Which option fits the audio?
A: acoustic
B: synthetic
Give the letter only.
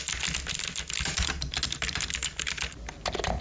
A